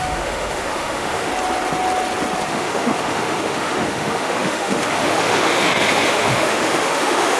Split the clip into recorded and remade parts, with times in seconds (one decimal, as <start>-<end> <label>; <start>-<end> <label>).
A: 0.0-1.3 remade; 1.3-2.5 recorded; 2.5-7.4 remade